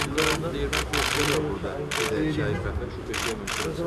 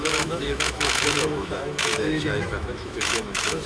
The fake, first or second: second